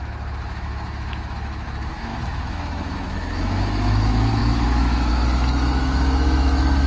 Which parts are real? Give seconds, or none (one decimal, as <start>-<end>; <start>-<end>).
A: none